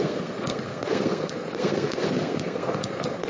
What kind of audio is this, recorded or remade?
remade